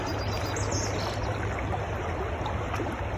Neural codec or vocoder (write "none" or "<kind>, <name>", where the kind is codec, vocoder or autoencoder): none